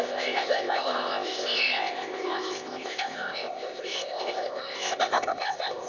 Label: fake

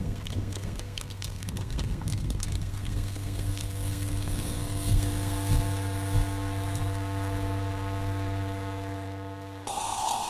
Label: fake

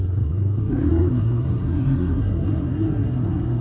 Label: fake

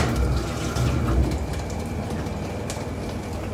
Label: real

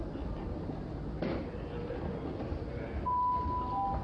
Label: real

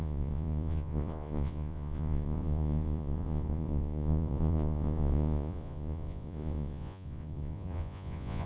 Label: fake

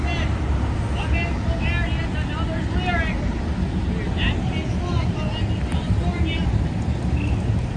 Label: real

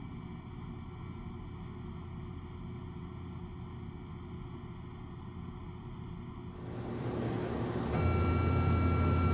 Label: real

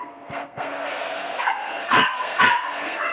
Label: fake